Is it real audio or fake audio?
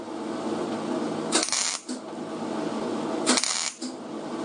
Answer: real